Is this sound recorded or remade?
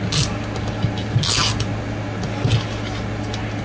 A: recorded